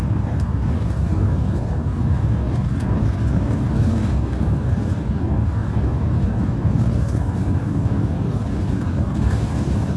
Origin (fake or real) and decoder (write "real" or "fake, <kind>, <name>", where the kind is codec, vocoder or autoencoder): fake, codec, DAC